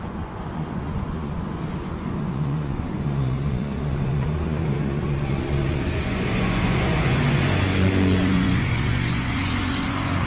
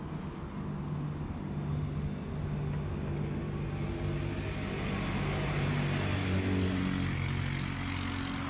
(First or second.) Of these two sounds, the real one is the second